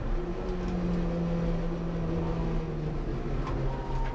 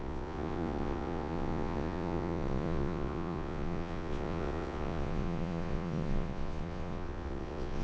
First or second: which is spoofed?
second